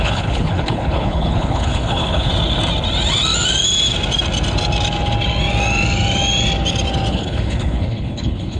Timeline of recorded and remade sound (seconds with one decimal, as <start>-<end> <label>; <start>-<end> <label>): 0.0-2.3 remade; 2.3-7.1 recorded; 7.1-8.6 remade